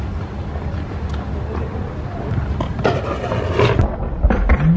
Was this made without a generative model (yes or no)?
yes